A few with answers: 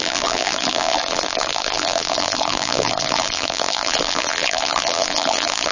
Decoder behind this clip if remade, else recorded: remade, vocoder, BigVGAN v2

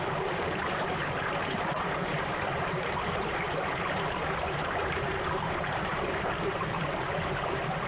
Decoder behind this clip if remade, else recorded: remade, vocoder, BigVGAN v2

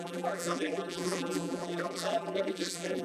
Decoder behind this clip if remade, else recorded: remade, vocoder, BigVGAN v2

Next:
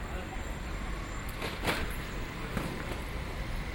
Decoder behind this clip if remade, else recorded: recorded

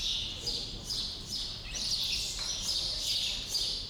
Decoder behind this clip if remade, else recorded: remade, vocoder, BigVGAN v2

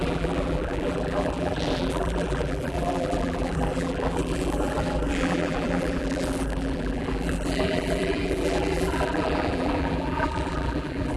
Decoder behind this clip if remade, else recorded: remade, vocoder, BigVGAN v2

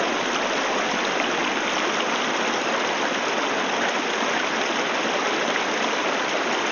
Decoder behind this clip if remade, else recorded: recorded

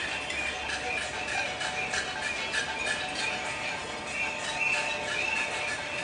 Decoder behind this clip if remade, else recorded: recorded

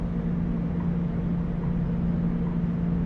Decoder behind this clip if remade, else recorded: recorded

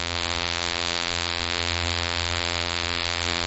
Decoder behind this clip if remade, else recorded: remade, vocoder, BigVGAN v2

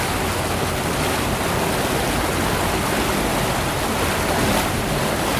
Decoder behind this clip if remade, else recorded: recorded